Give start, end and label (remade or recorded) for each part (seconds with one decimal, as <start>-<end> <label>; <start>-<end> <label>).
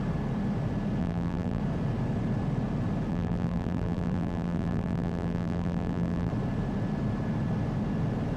0.0-1.0 recorded; 1.0-1.6 remade; 1.6-3.1 recorded; 3.1-6.3 remade; 6.3-8.4 recorded